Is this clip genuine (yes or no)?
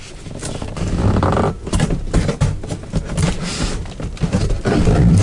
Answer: yes